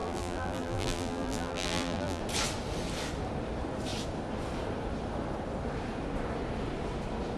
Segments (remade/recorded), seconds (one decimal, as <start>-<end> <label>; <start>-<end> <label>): 0.0-2.2 remade; 2.2-7.4 recorded